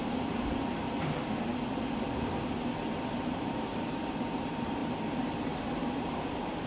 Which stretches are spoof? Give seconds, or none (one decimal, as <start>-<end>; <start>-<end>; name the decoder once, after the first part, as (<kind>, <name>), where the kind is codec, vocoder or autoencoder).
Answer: 0.0-1.5 (vocoder, BigVGAN v2); 3.1-6.7